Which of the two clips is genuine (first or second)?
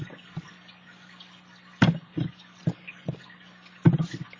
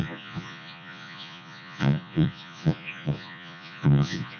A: first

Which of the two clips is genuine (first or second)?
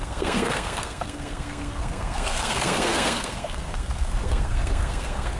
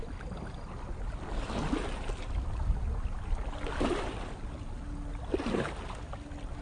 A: second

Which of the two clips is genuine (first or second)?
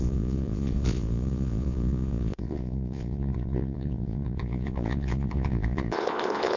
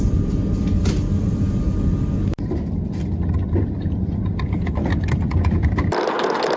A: second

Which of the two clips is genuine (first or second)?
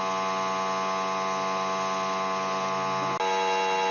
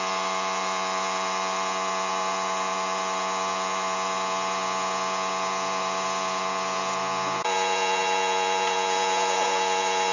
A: first